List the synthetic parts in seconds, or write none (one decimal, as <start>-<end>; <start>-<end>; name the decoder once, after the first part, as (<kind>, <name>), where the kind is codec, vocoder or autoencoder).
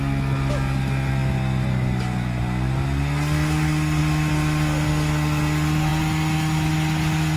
none